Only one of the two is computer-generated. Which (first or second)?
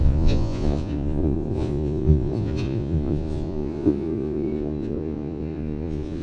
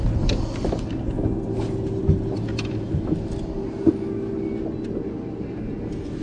first